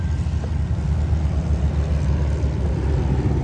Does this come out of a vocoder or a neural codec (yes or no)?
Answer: no